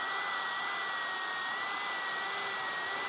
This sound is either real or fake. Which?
real